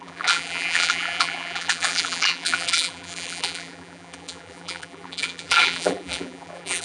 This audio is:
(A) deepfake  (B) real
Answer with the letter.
A